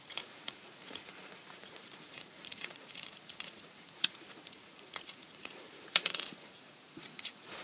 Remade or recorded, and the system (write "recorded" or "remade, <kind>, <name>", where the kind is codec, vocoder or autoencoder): remade, vocoder, Vocos